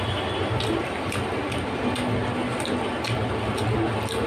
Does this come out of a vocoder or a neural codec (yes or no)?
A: no